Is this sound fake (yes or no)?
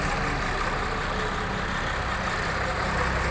no